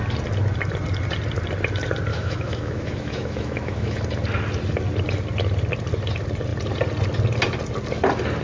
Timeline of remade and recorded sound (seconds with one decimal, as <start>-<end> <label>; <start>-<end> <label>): 0.0-2.1 recorded; 2.1-4.0 remade; 4.0-8.4 recorded